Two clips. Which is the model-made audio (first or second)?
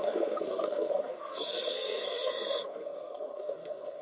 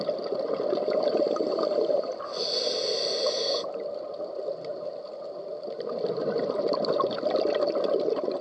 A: first